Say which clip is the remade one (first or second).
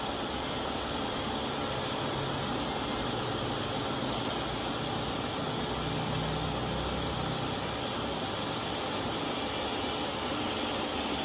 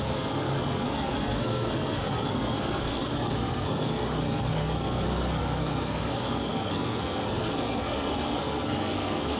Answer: second